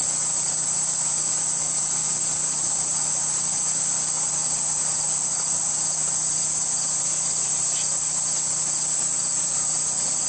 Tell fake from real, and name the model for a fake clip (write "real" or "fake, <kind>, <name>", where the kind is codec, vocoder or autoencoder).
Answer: real